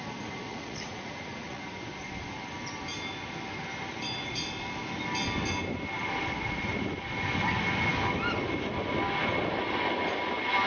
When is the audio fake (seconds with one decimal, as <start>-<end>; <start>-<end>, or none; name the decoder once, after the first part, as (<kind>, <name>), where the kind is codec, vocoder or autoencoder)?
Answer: 0.5-1.6 (vocoder, Vocos)